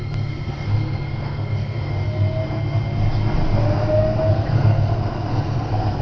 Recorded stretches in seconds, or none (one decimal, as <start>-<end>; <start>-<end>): 1.9-4.3